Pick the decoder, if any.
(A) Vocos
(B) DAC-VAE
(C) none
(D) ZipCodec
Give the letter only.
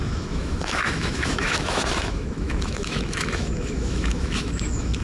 B